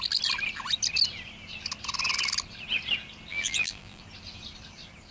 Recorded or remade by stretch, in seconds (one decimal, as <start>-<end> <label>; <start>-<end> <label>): 0.0-3.3 recorded; 3.3-4.0 remade; 4.0-5.1 recorded